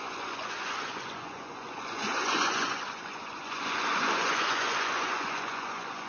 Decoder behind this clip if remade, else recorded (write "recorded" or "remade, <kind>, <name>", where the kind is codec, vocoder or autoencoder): remade, vocoder, Vocos